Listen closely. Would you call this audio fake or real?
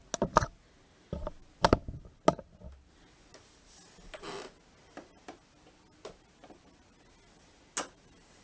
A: real